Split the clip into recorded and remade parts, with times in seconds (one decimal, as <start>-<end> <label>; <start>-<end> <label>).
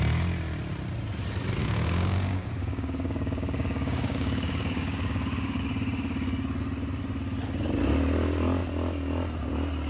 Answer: 0.0-1.6 recorded; 1.6-5.6 remade; 5.6-9.9 recorded